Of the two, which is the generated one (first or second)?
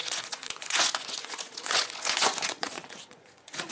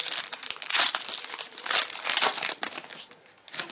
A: first